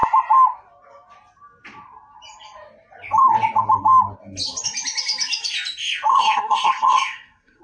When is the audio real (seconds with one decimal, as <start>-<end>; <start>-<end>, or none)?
0.0-6.1